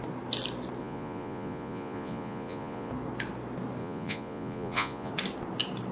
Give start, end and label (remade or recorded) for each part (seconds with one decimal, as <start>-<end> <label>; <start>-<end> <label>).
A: 0.0-0.8 recorded; 0.8-2.9 remade; 2.9-3.8 recorded; 3.8-5.1 remade; 5.1-5.9 recorded